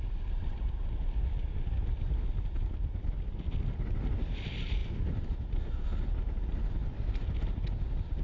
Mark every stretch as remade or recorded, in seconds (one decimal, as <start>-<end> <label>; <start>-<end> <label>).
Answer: 0.0-8.2 recorded